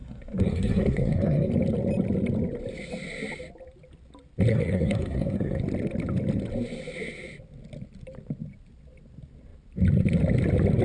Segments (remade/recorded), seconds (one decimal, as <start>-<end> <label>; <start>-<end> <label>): 0.0-1.5 remade; 1.5-4.5 recorded; 4.5-5.6 remade; 5.6-10.8 recorded